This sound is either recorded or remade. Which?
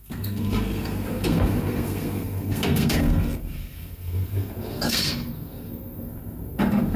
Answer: remade